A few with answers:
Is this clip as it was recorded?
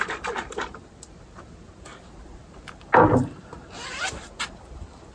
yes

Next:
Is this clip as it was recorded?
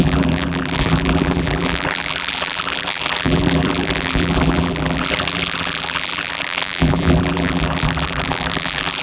no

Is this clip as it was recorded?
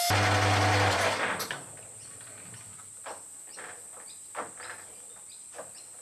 yes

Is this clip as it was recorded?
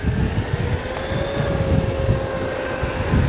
yes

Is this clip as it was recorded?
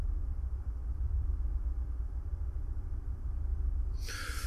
no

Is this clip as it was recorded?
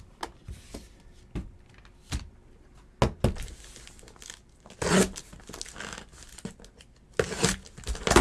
yes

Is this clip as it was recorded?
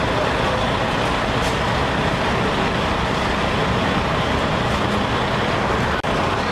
yes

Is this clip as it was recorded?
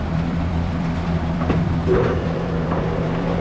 no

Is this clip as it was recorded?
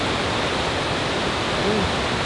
yes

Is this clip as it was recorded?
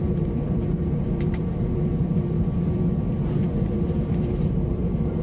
no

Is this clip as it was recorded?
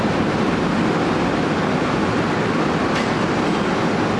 yes